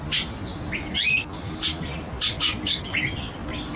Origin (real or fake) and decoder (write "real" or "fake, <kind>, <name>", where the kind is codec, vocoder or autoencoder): real